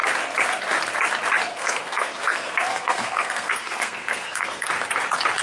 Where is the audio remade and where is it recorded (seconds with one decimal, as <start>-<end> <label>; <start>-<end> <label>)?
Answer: 0.0-1.5 recorded; 1.5-4.7 remade; 4.7-5.4 recorded